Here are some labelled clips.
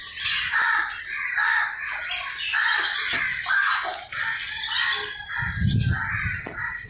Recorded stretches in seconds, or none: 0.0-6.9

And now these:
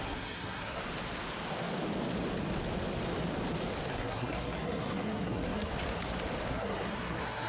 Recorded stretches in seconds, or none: 0.8-3.9; 5.7-6.5

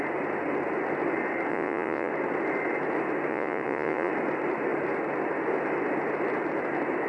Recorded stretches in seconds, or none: 0.0-1.5; 2.1-3.3; 4.1-7.1

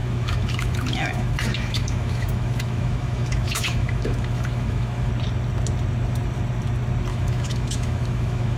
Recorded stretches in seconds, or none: 5.1-7.1

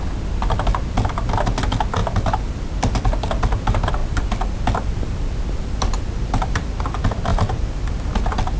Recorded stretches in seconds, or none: 0.0-2.0; 3.0-4.0; 6.8-7.3; 8.2-8.6